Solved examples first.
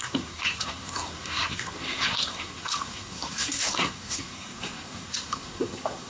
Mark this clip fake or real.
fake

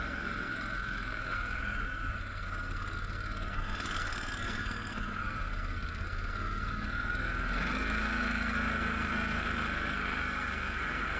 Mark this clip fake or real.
fake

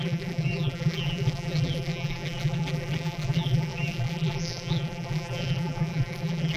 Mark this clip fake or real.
fake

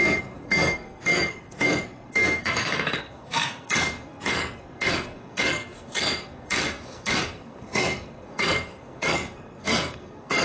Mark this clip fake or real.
fake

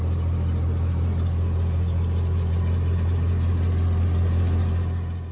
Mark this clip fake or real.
real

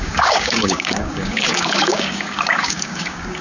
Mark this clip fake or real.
fake